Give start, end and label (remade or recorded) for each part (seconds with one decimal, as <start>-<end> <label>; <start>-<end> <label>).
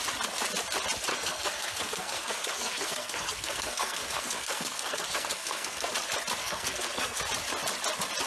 0.0-1.1 recorded; 1.1-5.9 remade; 5.9-6.4 recorded; 6.4-7.2 remade; 7.2-8.3 recorded